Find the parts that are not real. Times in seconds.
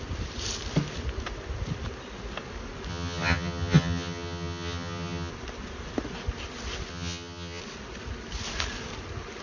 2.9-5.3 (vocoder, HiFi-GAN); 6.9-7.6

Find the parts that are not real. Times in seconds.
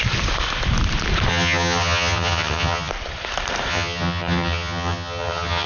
1.3-2.9 (vocoder, HiFi-GAN); 3.7-5.7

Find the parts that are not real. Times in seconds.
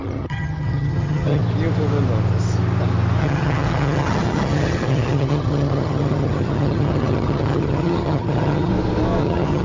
0.0-1.4 (vocoder, HiFi-GAN); 3.2-8.7; 9.2-9.6